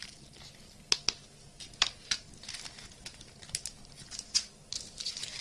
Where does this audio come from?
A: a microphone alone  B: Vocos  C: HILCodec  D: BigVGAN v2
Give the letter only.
A